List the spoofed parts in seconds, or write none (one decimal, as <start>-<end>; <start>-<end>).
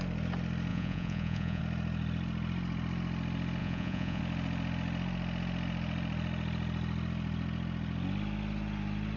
0.7-1.6; 3.6-4.2